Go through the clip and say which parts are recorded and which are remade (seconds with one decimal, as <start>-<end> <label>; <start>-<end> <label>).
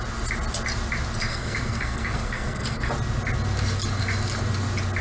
0.0-1.3 recorded; 1.3-2.9 remade; 2.9-5.0 recorded